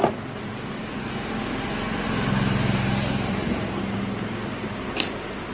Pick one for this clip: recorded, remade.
recorded